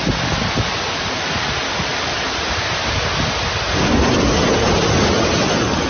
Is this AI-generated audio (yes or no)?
no